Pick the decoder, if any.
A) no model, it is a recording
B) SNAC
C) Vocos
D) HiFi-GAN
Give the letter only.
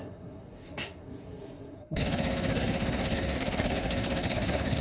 B